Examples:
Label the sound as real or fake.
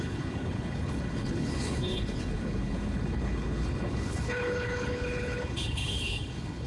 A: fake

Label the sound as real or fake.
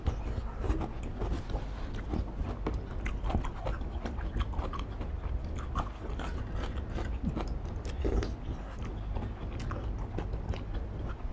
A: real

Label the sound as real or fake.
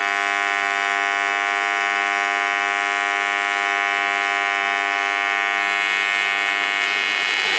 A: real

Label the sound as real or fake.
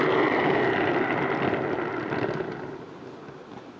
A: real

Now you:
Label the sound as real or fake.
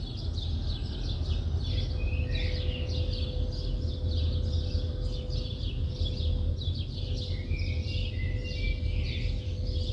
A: real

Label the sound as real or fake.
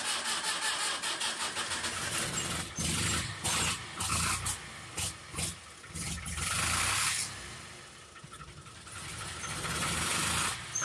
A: real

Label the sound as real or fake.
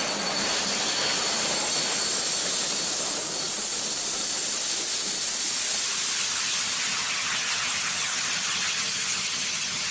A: real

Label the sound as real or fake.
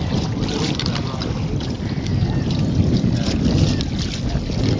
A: real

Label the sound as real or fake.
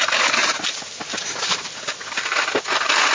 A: real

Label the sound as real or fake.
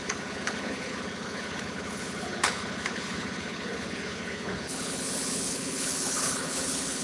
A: fake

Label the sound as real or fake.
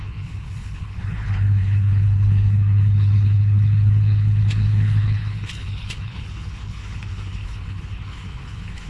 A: fake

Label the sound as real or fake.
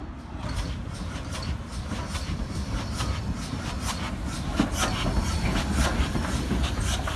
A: real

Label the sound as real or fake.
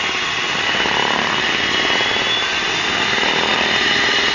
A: real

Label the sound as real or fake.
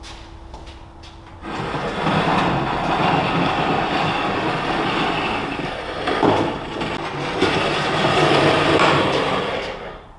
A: real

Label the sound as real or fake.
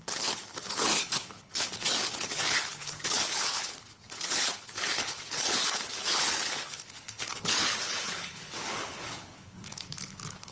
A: fake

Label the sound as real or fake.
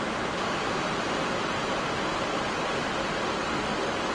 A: real